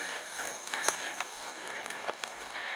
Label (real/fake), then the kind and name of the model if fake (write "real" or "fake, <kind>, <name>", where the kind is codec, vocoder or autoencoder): fake, codec, DAC